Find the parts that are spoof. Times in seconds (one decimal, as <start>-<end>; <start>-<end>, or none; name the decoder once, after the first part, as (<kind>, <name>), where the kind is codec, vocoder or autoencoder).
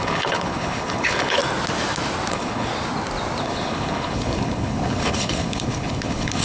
0.0-1.4 (codec, HILCodec); 2.3-2.7; 3.4-6.4